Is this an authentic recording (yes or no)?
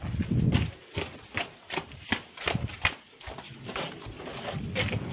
yes